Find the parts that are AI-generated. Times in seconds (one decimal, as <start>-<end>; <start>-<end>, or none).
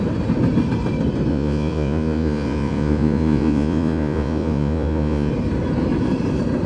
1.3-5.3